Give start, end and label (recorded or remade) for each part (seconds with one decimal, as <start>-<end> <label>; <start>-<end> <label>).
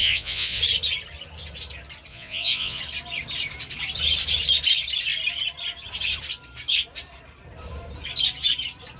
0.0-0.6 remade; 0.6-2.1 recorded; 2.1-2.8 remade; 2.8-9.0 recorded